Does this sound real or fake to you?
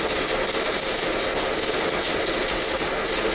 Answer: real